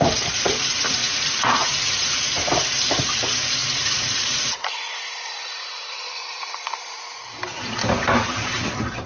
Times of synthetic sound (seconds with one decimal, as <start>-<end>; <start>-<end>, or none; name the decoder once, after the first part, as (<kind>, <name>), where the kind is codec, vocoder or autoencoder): 1.0-2.2 (vocoder, Vocos); 3.6-7.3